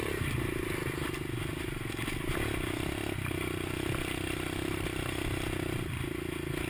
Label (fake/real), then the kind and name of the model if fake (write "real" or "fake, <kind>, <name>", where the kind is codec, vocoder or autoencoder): real